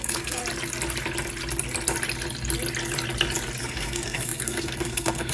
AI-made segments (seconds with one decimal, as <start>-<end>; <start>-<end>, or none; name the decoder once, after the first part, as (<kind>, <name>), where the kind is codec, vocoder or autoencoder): 0.0-0.4 (codec, SNAC); 3.6-5.3